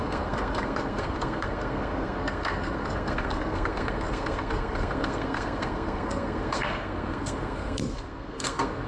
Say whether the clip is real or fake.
fake